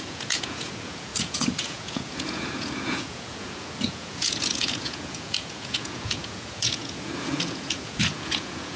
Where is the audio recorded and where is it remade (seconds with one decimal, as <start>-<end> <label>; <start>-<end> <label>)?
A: 0.0-8.8 remade